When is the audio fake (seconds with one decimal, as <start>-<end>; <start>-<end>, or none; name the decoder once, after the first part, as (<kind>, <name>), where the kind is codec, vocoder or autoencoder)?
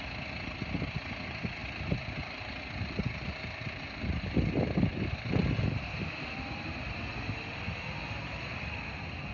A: none